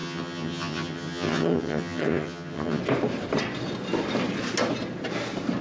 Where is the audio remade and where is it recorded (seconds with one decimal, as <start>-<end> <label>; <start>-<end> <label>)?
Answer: 0.0-2.8 remade; 2.8-5.6 recorded